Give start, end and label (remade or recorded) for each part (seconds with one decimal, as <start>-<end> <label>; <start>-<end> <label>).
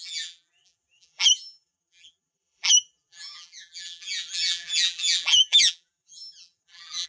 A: 0.0-7.1 remade